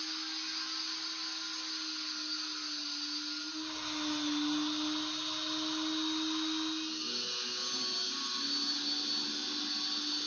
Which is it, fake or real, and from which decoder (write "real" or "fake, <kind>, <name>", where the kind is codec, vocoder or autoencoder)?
real